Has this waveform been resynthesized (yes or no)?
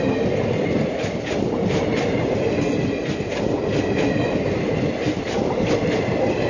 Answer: no